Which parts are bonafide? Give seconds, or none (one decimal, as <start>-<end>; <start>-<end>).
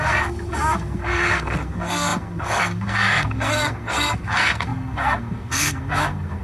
none